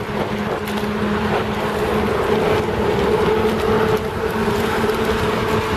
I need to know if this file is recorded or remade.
recorded